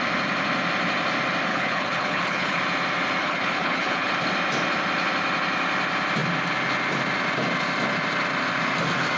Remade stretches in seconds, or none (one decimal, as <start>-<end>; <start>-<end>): 1.5-2.6; 3.2-4.1